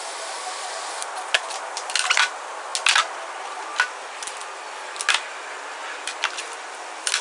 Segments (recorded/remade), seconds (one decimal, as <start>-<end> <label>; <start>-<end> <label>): 0.0-7.2 recorded